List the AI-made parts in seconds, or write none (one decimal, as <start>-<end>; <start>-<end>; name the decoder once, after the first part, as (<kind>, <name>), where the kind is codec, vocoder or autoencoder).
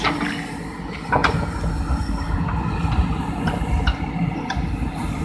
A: none